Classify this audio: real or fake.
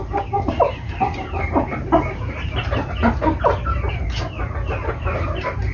real